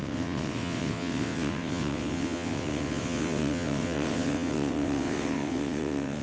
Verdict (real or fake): fake